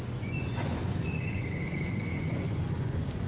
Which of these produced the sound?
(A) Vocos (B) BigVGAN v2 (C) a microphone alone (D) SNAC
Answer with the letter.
A